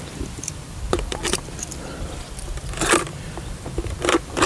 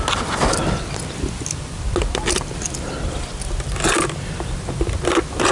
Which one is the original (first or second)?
second